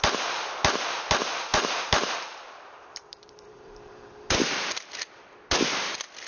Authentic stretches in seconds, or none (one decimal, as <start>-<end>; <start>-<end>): 0.0-1.5; 4.3-6.3